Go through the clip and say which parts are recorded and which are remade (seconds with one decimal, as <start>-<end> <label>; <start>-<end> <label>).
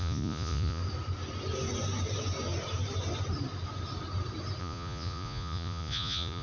0.0-0.8 remade; 0.8-4.6 recorded; 4.6-6.4 remade